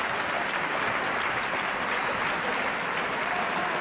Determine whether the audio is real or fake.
fake